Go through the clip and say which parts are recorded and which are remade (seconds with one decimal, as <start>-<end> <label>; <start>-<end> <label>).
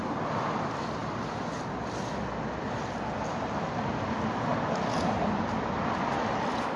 0.0-6.8 recorded